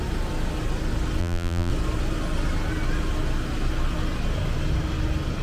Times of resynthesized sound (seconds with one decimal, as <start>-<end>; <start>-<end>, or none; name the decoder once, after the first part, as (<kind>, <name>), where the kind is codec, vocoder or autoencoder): 1.2-1.7 (vocoder, BigVGAN v2)